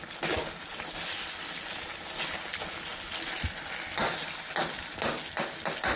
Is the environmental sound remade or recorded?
recorded